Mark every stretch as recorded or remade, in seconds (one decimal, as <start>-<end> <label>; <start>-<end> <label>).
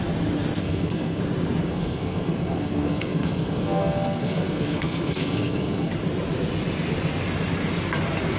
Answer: 0.0-0.6 recorded; 0.6-1.2 remade; 1.2-1.6 recorded; 1.6-5.9 remade; 5.9-8.4 recorded